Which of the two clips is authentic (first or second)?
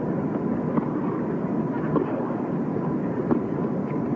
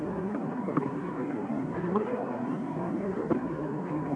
first